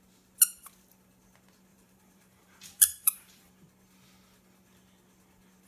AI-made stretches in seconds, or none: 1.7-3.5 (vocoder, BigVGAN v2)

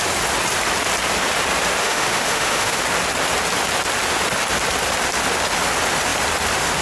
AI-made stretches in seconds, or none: 1.8-2.8 (autoencoder, DAC-VAE)

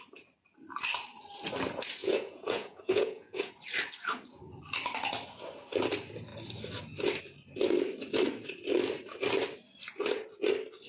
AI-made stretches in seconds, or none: 2.0-3.5 (vocoder, Vocos)

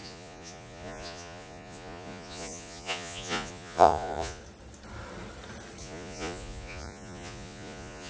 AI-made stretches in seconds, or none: 0.0-4.4 (vocoder, Vocos); 5.8-8.1